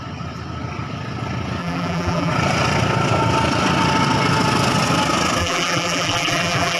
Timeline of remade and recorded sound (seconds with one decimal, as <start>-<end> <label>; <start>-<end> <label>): 0.0-1.6 recorded; 1.6-2.3 remade; 2.3-5.4 recorded; 5.4-6.8 remade